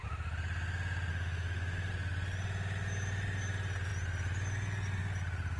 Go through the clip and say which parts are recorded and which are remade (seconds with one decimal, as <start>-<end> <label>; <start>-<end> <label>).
0.0-1.1 recorded; 1.1-1.9 remade; 1.9-5.6 recorded

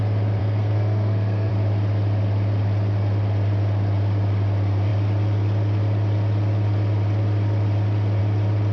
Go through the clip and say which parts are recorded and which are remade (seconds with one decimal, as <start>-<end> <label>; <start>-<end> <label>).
0.0-0.4 recorded; 0.4-1.5 remade; 1.5-8.7 recorded